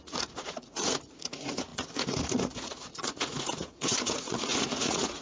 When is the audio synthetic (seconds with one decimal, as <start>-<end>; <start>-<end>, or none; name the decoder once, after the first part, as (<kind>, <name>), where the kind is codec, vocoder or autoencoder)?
0.0-5.2 (vocoder, Vocos)